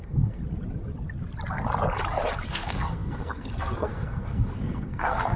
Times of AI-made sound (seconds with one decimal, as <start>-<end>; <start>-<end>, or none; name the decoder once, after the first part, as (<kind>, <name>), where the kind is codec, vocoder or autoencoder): 0.0-0.4 (codec, SNAC); 2.5-5.4